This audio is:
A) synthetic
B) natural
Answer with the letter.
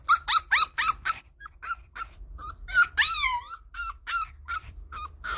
A